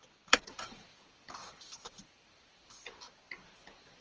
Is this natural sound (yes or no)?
no